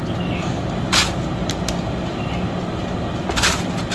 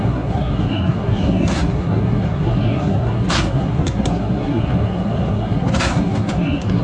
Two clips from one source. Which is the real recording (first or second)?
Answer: first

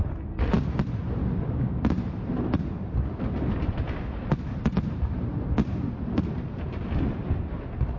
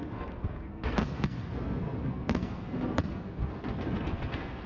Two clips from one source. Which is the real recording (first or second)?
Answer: first